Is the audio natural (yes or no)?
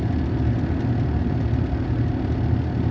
yes